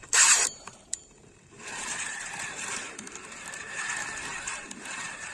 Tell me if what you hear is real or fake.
fake